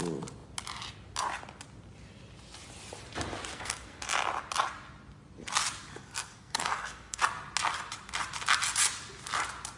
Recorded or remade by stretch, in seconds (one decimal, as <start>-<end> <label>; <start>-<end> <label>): 0.0-3.5 recorded; 3.5-4.0 remade; 4.0-5.9 recorded; 5.9-7.2 remade; 7.2-9.8 recorded